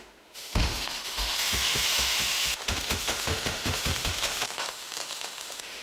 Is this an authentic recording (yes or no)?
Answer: no